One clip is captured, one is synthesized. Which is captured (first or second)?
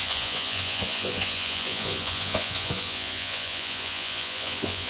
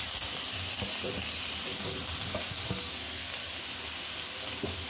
second